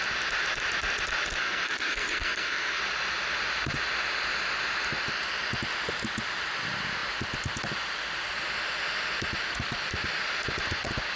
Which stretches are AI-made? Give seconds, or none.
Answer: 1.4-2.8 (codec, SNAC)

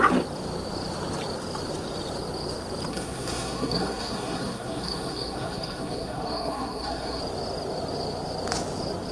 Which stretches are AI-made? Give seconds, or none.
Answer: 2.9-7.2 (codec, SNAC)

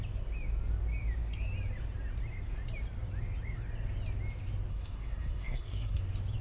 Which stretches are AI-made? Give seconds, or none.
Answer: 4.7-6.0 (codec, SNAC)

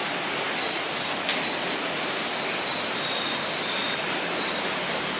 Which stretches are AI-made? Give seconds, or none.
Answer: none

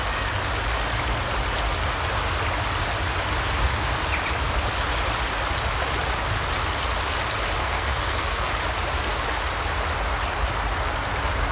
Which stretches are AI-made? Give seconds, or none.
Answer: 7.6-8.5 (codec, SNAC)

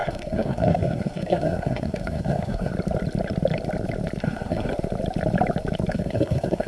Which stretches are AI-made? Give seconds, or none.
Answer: 0.0-2.7 (codec, SNAC); 4.2-4.7; 5.9-6.7